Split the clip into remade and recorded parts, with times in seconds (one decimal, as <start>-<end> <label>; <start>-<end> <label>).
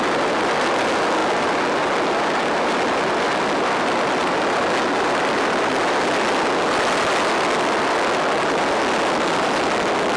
0.0-10.2 recorded